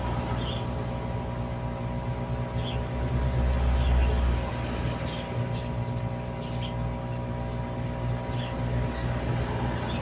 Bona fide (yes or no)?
yes